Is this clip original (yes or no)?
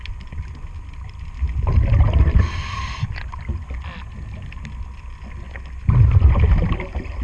yes